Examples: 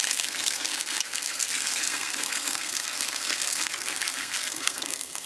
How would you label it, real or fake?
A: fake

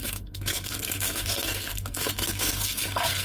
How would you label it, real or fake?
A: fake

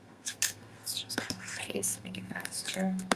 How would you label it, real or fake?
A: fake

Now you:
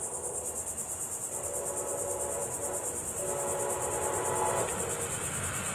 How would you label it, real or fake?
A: real